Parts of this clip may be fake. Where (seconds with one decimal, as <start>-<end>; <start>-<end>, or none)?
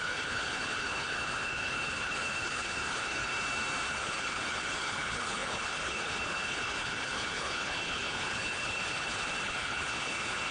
0.0-3.3; 3.9-10.5